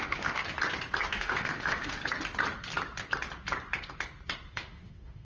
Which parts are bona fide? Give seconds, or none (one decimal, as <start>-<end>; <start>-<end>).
0.4-1.1; 2.0-4.5